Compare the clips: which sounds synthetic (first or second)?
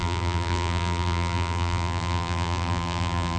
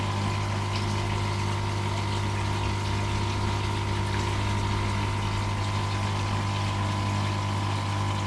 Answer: first